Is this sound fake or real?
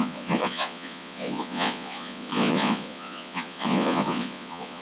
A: fake